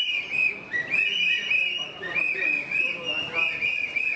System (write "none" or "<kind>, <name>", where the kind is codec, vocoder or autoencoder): none